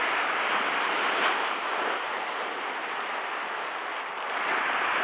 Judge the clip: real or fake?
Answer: real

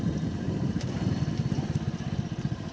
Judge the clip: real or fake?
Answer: fake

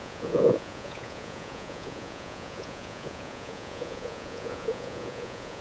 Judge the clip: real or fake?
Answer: fake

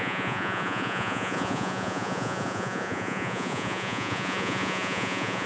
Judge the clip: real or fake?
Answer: fake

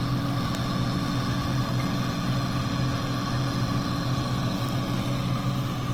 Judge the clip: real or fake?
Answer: real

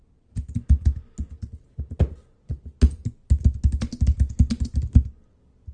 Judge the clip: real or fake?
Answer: real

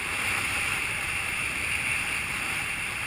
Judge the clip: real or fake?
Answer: fake